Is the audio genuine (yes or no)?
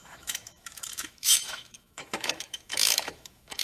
no